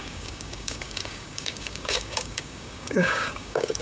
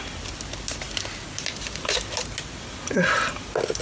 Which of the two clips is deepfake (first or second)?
first